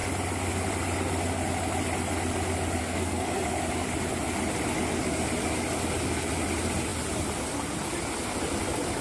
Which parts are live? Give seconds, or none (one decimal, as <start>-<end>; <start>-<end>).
0.0-2.8; 3.5-9.0

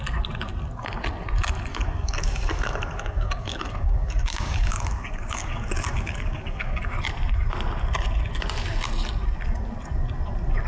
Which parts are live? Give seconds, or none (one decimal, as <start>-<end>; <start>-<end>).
0.0-1.7; 6.8-10.7